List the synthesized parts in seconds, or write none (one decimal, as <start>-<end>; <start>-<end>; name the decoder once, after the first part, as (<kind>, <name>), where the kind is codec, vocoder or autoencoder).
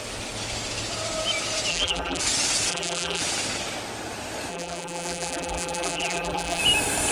1.7-2.2 (vocoder, BigVGAN v2); 2.7-3.2; 4.5-6.6